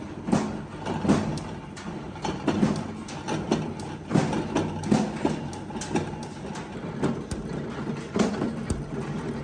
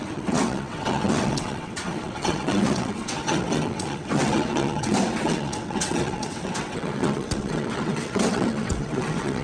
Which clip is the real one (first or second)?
first